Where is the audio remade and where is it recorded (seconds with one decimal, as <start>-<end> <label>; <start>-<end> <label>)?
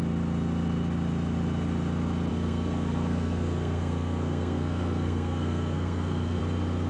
0.0-2.3 recorded; 2.3-6.4 remade; 6.4-6.9 recorded